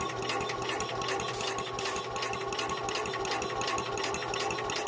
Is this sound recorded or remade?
recorded